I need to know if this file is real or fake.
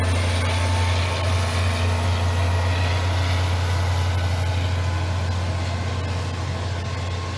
real